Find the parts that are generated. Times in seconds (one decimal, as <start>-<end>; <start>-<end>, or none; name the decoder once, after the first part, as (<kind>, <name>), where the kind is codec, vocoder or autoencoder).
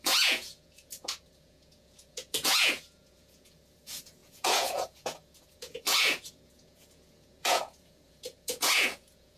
0.0-9.4 (vocoder, Vocos)